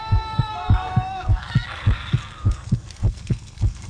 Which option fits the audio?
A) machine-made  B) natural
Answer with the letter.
A